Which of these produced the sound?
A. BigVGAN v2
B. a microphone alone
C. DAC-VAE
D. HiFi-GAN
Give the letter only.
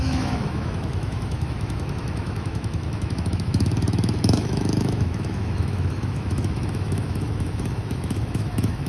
C